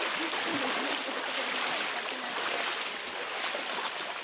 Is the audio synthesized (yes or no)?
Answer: no